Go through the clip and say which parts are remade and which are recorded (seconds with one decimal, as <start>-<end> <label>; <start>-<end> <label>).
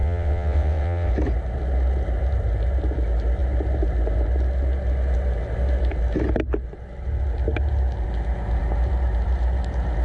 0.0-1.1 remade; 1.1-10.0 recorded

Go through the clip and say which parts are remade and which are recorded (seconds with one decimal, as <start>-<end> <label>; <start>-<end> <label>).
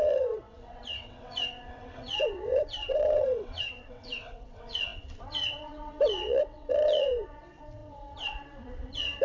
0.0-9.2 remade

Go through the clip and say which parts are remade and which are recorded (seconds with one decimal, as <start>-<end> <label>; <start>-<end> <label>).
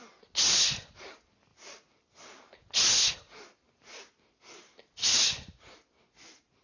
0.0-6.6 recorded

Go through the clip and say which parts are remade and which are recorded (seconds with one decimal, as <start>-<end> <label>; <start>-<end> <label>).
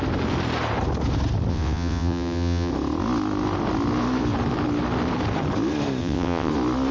0.0-1.5 recorded; 1.5-2.7 remade; 2.7-6.0 recorded; 6.0-6.5 remade; 6.5-6.9 recorded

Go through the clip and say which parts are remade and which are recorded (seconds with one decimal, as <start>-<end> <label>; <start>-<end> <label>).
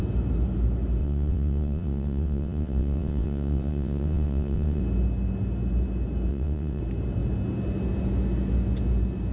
0.0-1.0 recorded; 1.0-4.8 remade; 4.8-6.3 recorded; 6.3-6.8 remade; 6.8-9.3 recorded